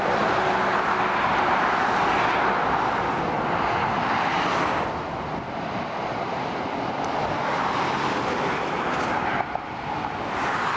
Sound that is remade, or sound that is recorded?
recorded